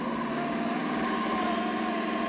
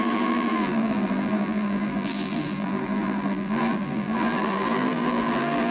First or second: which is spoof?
second